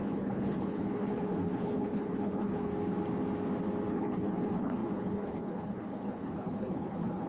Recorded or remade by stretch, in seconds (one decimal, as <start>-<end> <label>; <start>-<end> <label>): 0.0-2.7 remade; 2.7-3.9 recorded; 3.9-7.3 remade